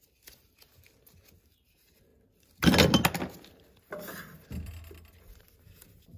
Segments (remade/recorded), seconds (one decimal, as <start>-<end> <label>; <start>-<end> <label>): 0.0-6.2 recorded